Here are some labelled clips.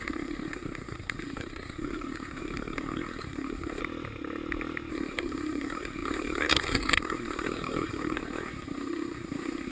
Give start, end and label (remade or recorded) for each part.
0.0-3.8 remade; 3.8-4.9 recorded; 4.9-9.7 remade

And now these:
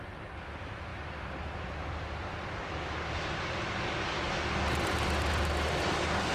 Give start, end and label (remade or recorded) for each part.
0.0-6.3 recorded

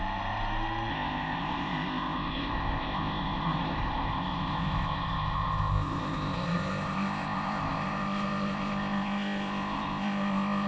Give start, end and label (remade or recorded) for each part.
0.0-0.9 recorded; 0.9-10.7 remade